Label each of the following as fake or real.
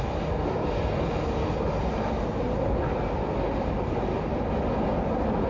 real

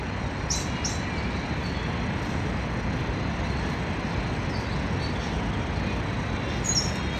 real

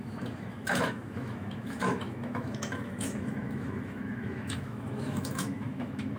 fake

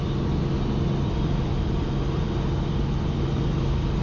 real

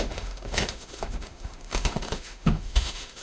fake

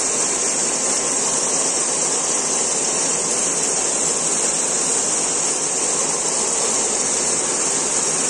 real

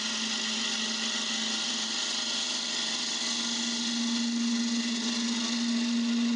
real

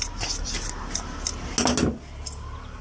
real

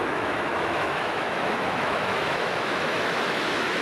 fake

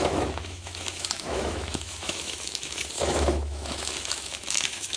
fake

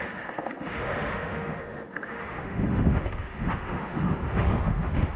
fake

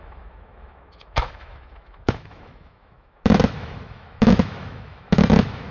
fake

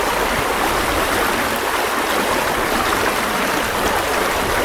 real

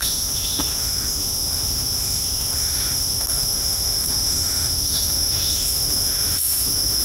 fake